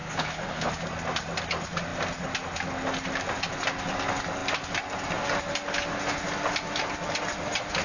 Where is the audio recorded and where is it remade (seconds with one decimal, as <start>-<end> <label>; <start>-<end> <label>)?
0.0-0.7 remade; 0.7-7.8 recorded